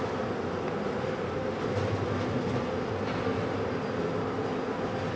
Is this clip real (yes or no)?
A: yes